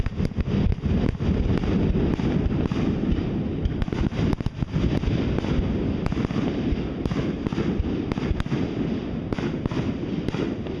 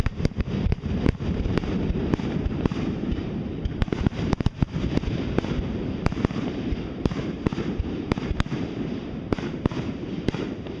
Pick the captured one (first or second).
first